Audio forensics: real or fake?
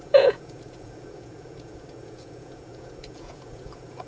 fake